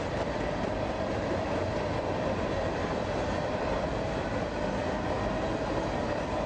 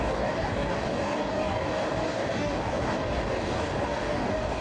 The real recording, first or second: first